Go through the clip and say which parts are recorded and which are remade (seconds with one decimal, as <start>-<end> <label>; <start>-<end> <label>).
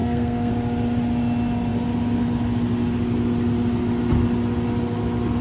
0.0-0.5 remade; 0.5-5.4 recorded